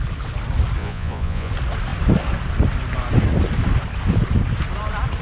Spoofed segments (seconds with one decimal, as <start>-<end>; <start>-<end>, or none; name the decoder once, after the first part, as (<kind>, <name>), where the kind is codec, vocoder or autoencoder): 0.8-1.5 (vocoder, Vocos)